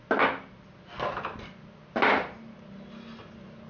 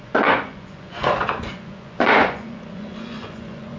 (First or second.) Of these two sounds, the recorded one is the first